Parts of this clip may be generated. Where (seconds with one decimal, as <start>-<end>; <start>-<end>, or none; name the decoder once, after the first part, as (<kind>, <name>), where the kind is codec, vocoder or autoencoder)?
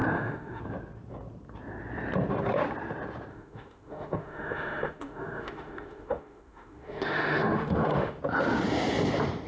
0.0-0.6 (autoencoder, DAC-VAE); 3.3-8.2